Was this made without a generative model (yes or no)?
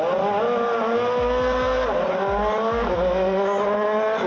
yes